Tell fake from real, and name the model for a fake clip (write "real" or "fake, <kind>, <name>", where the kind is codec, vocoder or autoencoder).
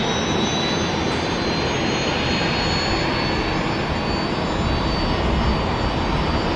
real